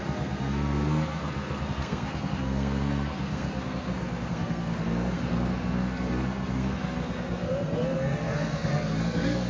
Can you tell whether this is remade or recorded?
remade